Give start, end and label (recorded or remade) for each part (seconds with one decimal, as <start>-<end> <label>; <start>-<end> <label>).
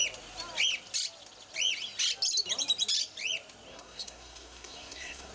0.0-3.7 recorded; 3.7-5.3 remade